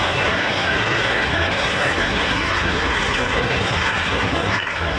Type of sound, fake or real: fake